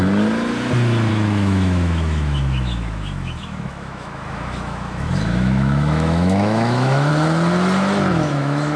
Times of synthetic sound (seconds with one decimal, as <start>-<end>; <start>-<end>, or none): 1.1-7.1; 8.1-8.8